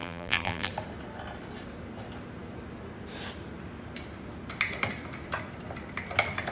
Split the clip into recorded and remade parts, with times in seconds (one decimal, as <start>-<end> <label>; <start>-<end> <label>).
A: 0.0-0.7 remade; 0.7-6.5 recorded